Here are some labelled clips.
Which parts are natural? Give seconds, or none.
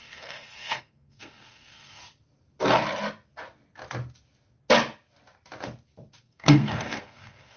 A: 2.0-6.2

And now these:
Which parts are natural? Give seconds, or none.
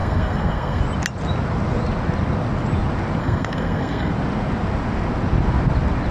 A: 0.8-3.2; 4.1-6.1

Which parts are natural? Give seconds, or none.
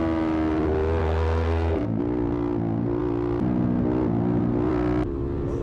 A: 0.0-1.0; 2.0-5.6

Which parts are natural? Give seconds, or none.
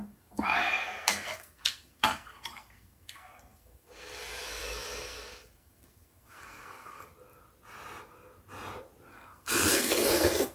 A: 7.1-9.1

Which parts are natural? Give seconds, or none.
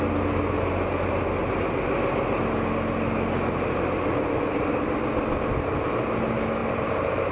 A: 0.0-7.3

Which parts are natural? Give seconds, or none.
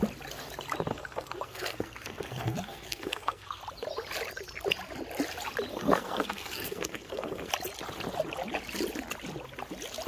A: 0.0-0.9; 3.6-5.7; 7.5-10.1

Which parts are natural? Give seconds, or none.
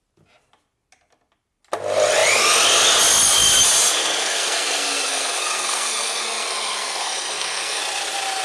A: 0.0-4.0; 7.8-8.4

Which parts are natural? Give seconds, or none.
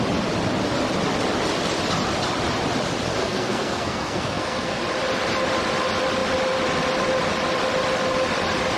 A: 0.0-3.2; 4.8-8.8